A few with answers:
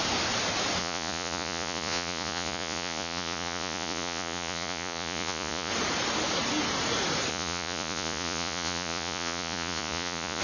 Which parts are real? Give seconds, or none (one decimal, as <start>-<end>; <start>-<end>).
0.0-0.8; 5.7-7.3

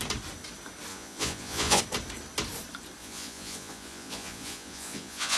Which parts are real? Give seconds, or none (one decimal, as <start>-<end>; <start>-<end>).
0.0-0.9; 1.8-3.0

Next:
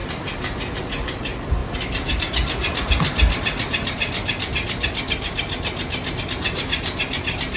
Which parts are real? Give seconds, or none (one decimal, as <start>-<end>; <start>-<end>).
0.0-7.6

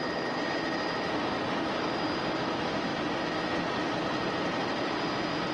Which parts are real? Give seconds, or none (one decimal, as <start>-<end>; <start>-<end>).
0.0-5.5

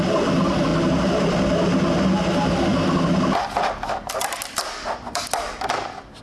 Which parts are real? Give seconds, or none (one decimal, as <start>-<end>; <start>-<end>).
0.0-6.2